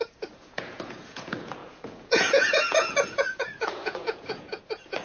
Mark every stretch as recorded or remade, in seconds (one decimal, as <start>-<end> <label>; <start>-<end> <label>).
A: 0.0-5.0 remade